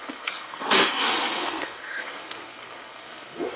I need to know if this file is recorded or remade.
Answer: remade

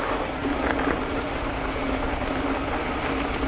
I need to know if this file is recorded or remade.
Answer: recorded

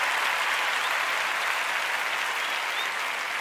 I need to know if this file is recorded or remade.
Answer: recorded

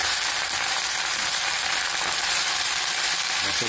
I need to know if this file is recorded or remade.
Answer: recorded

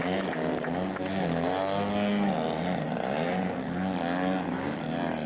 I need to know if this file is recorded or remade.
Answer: recorded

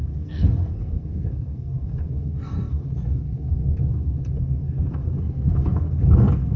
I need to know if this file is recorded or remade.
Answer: remade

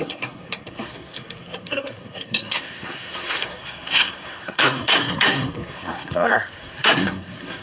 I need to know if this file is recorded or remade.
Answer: remade